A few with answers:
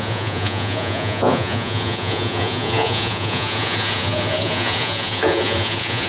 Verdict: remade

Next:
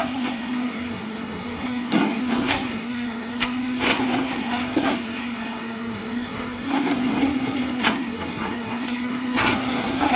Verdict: remade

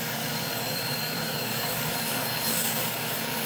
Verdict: remade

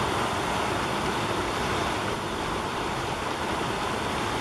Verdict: remade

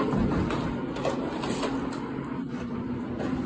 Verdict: recorded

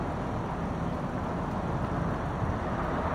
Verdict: recorded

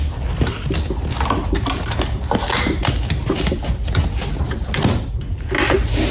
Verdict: recorded